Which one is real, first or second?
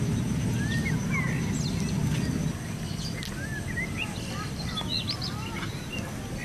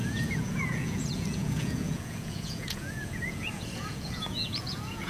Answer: first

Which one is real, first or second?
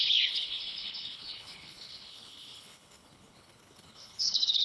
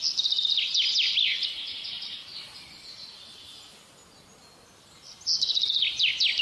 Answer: second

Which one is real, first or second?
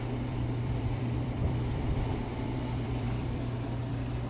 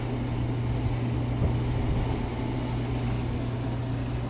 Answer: second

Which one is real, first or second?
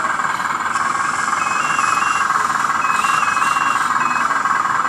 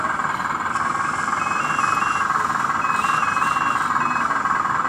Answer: second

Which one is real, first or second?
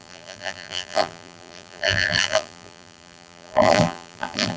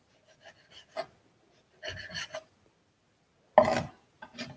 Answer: second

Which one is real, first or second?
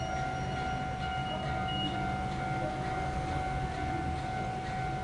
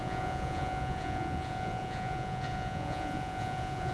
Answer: first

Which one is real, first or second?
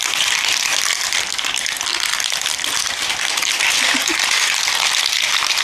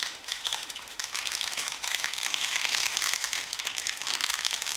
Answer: first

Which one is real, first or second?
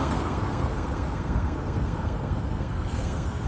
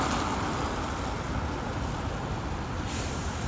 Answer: second